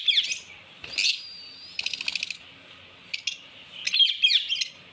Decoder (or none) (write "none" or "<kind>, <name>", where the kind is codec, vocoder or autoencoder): none